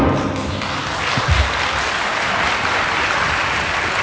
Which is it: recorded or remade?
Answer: recorded